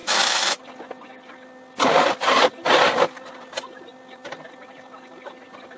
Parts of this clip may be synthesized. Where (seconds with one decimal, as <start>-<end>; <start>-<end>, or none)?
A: 0.0-0.6